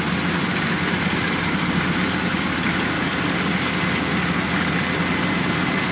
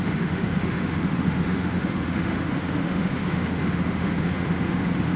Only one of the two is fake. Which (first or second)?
second